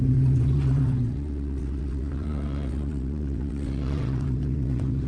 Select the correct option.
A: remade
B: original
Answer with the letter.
A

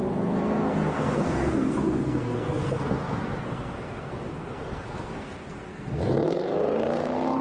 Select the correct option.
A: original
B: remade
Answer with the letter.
B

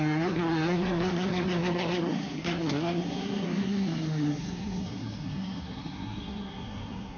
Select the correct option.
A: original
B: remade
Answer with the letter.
B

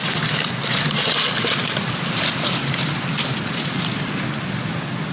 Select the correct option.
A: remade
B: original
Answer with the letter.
B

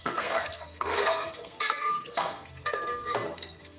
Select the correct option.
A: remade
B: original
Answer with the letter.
A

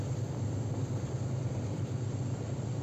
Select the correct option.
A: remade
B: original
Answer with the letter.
A